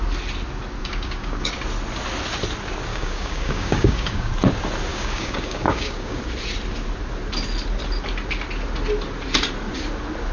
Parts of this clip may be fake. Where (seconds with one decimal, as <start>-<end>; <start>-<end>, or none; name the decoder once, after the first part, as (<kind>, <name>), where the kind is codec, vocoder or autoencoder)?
0.8-1.5 (codec, DAC); 2.9-4.3; 4.9-6.2